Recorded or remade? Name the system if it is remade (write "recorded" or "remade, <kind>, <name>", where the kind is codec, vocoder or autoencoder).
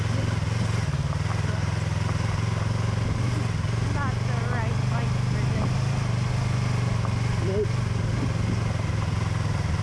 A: recorded